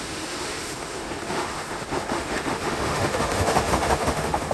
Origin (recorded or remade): remade